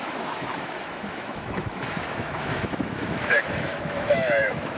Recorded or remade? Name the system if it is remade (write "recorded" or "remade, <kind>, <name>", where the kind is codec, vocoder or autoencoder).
remade, autoencoder, DAC-VAE